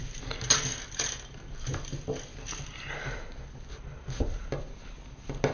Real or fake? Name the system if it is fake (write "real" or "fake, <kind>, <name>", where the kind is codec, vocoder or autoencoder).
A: real